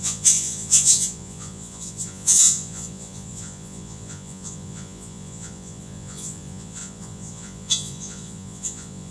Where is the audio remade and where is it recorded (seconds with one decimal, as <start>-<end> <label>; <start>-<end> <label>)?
0.0-9.1 remade